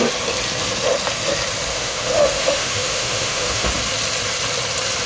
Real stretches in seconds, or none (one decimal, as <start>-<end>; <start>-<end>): 0.0-1.7; 3.7-5.1